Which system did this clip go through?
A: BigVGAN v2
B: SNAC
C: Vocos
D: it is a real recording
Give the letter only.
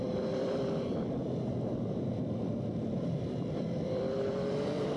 A